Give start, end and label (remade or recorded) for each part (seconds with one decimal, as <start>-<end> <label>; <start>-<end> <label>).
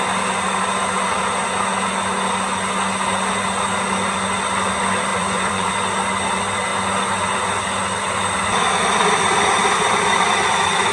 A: 0.0-5.1 recorded; 5.1-5.7 remade; 5.7-10.9 recorded